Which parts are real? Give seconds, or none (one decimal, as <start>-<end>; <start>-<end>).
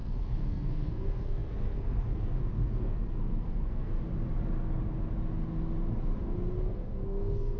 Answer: 3.9-6.6